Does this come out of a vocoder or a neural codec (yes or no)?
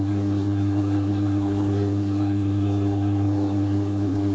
yes